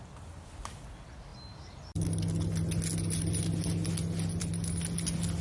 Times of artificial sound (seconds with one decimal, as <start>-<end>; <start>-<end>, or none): none